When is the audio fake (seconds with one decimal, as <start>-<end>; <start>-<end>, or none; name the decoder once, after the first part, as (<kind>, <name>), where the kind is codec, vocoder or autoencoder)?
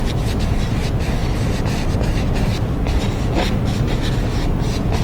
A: none